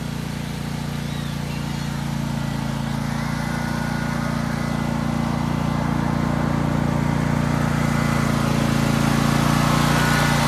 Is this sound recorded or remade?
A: recorded